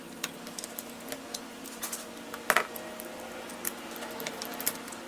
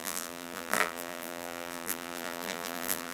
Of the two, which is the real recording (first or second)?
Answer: first